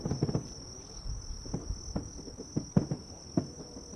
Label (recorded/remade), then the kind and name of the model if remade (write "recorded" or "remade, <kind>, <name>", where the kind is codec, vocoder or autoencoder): recorded